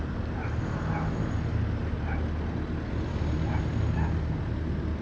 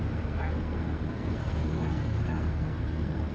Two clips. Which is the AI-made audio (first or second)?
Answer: second